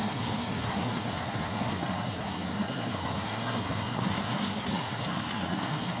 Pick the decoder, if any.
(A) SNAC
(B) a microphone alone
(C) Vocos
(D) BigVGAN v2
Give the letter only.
A